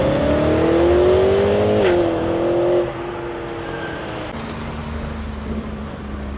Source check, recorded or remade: recorded